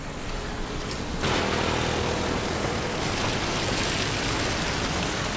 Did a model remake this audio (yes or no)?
no